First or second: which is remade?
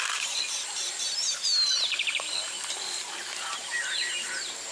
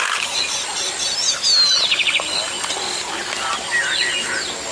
first